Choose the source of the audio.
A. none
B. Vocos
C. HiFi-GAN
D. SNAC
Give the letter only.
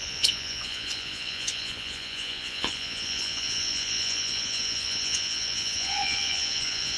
B